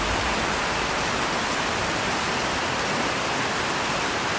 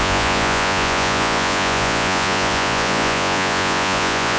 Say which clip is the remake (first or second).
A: second